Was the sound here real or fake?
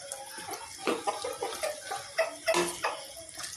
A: real